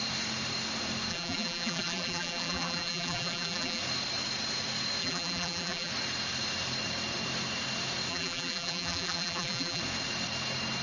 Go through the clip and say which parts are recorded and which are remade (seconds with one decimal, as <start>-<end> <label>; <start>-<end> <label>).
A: 0.0-1.1 recorded; 1.1-3.8 remade; 3.8-5.0 recorded; 5.0-5.9 remade; 5.9-8.1 recorded; 8.1-9.8 remade; 9.8-10.8 recorded